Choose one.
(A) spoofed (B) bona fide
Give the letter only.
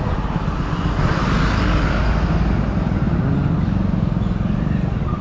B